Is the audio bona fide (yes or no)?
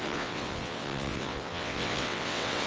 no